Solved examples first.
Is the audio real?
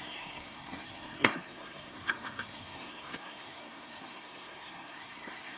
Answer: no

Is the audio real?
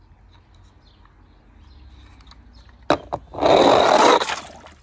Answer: yes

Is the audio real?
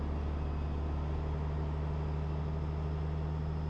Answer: yes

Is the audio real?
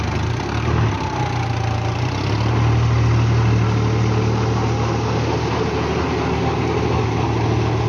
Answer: yes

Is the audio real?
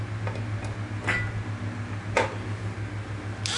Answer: yes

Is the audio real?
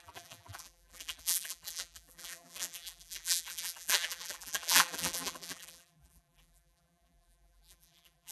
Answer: no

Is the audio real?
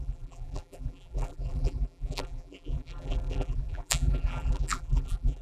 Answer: no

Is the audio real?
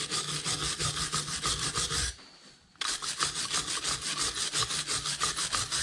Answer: yes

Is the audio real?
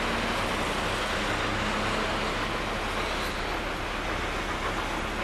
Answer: yes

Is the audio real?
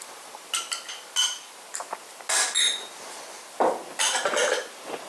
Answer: yes